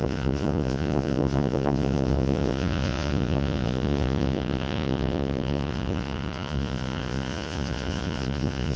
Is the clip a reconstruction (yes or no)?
yes